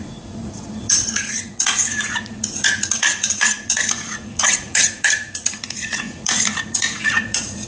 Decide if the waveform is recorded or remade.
remade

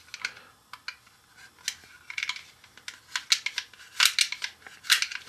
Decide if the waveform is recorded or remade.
recorded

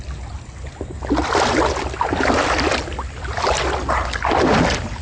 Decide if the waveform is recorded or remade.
recorded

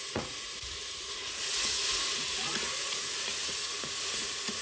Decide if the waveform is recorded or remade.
remade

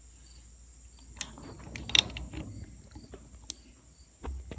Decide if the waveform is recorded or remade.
recorded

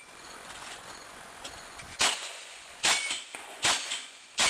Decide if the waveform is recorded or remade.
remade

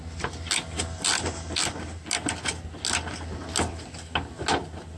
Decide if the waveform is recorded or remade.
recorded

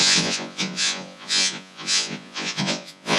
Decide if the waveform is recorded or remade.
remade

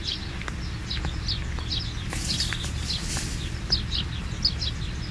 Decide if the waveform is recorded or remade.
recorded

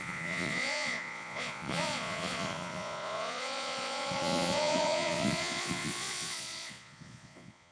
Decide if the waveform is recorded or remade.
remade